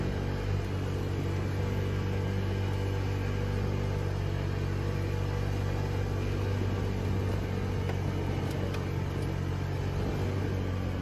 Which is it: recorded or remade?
recorded